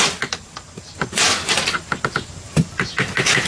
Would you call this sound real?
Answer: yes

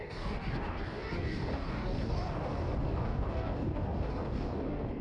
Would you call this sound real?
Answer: no